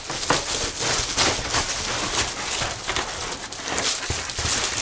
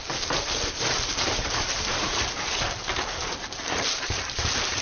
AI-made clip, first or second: second